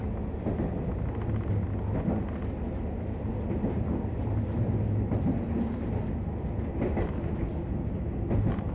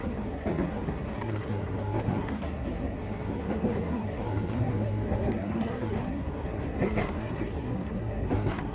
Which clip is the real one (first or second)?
first